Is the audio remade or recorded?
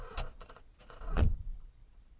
remade